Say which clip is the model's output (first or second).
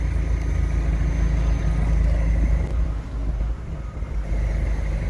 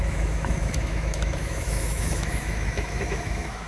second